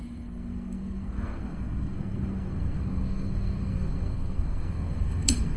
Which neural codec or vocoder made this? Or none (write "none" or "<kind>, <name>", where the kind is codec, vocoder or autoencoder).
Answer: codec, SNAC